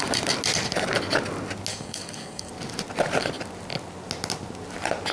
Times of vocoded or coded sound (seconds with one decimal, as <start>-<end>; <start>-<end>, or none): 1.7-2.5

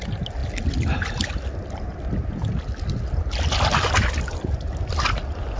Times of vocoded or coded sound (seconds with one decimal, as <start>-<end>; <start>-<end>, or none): none